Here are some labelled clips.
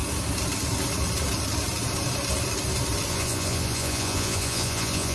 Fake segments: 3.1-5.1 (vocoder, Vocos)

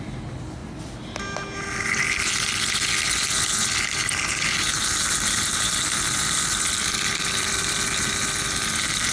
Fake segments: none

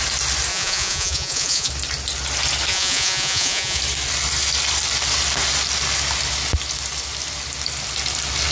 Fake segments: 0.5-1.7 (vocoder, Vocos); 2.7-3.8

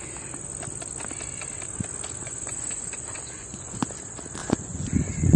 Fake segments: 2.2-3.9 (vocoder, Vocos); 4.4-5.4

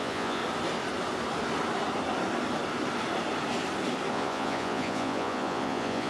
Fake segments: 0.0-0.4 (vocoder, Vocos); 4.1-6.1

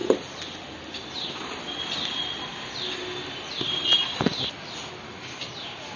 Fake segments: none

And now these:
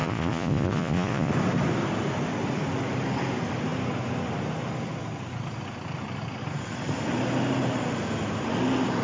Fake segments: 0.0-1.3 (vocoder, Vocos)

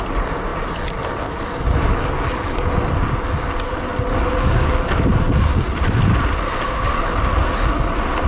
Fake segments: none